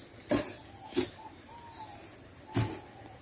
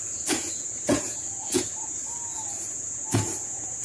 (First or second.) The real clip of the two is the first